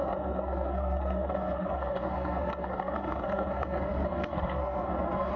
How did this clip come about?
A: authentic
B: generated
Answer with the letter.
B